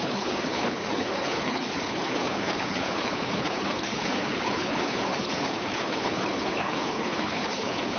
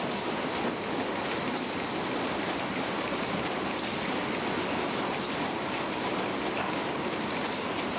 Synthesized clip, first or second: first